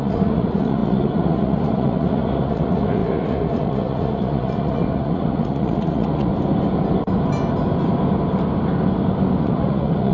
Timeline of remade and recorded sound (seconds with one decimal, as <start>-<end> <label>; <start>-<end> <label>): 0.0-6.3 remade; 6.3-9.4 recorded; 9.4-10.1 remade